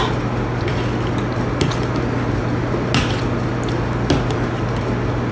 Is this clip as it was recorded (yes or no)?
yes